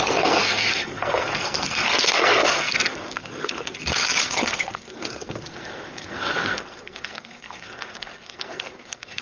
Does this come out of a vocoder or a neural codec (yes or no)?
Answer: yes